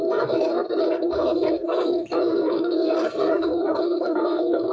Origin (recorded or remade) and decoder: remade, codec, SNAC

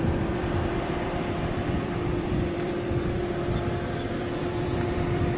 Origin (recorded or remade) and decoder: remade, vocoder, BigVGAN v2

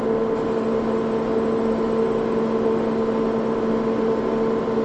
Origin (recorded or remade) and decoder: recorded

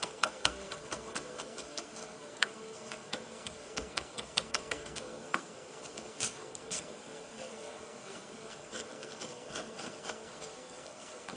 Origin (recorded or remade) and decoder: remade, codec, SNAC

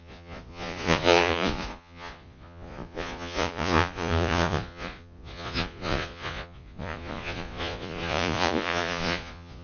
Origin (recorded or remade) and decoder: remade, vocoder, Vocos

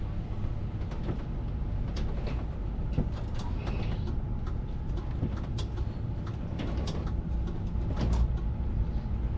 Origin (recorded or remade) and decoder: recorded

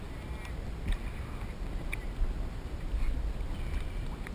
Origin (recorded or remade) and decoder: recorded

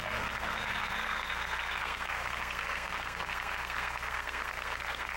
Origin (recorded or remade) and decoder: remade, codec, SNAC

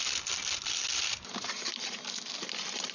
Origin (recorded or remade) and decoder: recorded